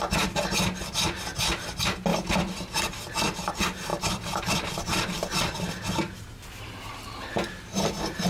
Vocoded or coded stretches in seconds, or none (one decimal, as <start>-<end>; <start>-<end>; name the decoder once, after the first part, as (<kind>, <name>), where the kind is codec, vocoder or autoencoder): 2.1-3.5 (vocoder, BigVGAN v2); 3.9-5.4